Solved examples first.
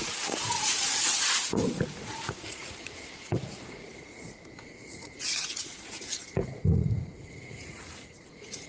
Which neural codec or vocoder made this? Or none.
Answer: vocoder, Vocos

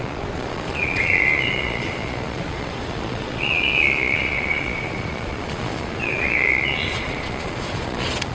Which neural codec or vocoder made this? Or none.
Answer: vocoder, Vocos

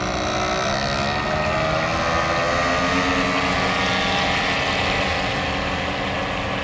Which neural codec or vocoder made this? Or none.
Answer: none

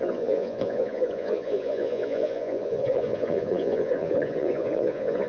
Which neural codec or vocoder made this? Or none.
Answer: vocoder, Vocos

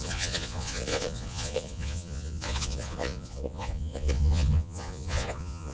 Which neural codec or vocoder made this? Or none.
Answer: vocoder, Vocos